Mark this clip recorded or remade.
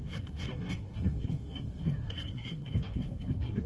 remade